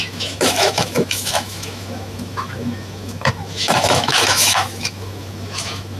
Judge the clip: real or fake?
fake